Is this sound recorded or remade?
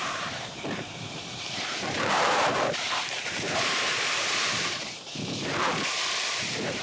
remade